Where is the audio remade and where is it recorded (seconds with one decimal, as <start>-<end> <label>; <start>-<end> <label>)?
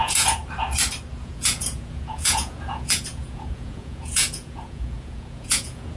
0.0-0.4 remade; 0.4-1.2 recorded; 1.2-6.0 remade